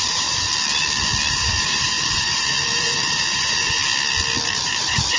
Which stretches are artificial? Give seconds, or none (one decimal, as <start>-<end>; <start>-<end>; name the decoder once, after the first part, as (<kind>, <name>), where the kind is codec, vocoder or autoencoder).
0.0-0.5 (vocoder, BigVGAN v2); 1.3-3.8; 4.6-5.2